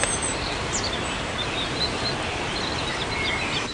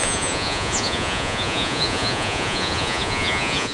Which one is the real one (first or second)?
first